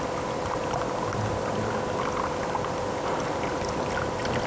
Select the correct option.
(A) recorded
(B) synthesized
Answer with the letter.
A